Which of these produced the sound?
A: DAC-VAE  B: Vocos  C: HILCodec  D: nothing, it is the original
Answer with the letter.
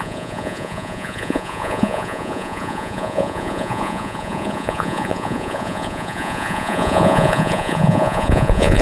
B